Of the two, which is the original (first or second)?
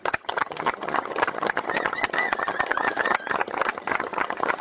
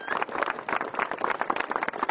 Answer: second